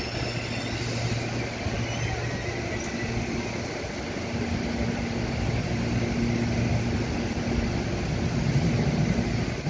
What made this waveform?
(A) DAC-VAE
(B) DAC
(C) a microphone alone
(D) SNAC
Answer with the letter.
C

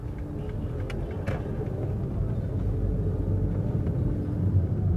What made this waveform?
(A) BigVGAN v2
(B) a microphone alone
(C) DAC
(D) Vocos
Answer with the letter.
B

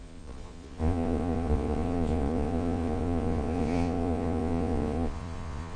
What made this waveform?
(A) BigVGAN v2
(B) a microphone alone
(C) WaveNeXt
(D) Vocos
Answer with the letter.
D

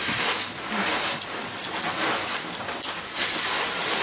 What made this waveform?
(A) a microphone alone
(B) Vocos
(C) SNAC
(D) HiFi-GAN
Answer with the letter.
A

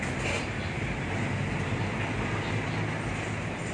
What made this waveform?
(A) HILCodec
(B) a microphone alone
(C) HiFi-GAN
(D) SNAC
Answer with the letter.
B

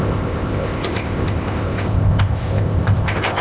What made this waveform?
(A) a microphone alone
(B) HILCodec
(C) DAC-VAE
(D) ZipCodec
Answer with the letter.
D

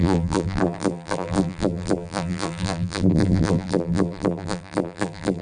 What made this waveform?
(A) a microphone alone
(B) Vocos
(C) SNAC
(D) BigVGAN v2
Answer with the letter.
D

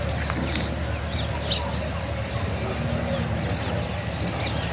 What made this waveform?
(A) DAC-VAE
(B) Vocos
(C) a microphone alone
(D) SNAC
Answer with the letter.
C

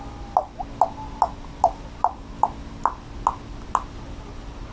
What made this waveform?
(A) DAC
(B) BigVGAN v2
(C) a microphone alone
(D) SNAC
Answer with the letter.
C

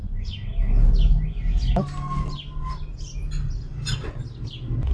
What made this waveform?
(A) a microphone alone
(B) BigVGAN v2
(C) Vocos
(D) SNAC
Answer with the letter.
A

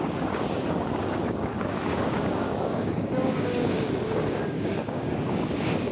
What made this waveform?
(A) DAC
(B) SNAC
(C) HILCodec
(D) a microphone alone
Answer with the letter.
A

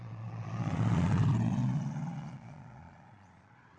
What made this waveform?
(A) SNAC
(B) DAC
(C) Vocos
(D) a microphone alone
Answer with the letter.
C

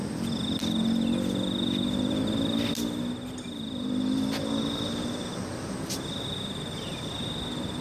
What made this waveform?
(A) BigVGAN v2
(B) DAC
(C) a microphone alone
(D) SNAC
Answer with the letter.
C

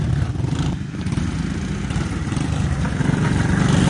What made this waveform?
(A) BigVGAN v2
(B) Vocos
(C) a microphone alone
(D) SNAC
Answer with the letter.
C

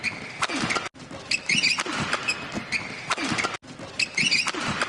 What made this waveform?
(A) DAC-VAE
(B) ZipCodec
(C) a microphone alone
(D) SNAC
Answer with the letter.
C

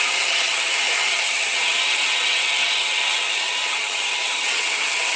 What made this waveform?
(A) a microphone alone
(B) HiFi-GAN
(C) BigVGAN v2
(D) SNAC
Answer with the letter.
B